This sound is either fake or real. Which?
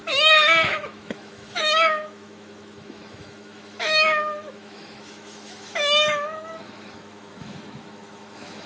fake